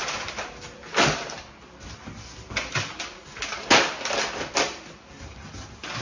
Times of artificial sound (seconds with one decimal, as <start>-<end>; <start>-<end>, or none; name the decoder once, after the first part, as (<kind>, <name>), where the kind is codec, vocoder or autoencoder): none